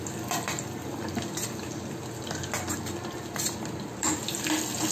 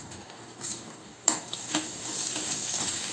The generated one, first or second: second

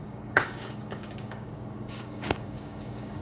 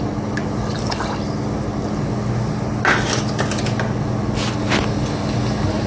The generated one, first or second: first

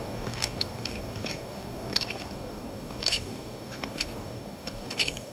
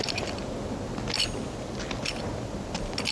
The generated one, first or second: first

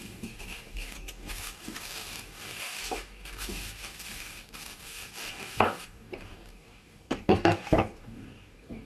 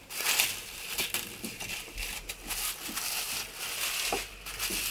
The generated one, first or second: first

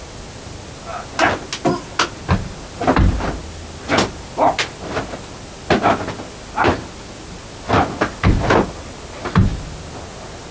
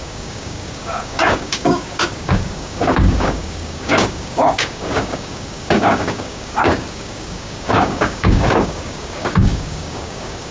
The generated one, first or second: second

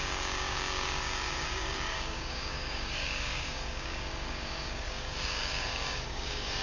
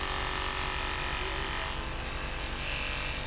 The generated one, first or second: first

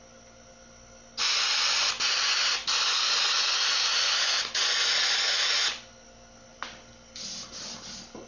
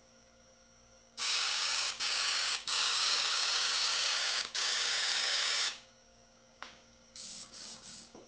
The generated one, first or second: second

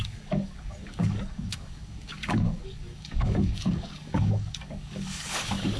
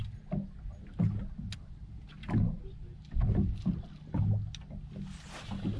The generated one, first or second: first